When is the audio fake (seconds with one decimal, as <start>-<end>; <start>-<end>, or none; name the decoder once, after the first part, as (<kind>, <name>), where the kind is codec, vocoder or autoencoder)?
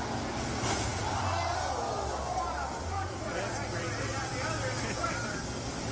none